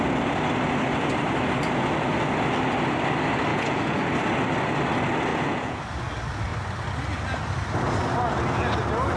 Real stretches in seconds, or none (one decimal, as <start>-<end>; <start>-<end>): 0.0-3.5; 4.0-5.3; 5.8-9.2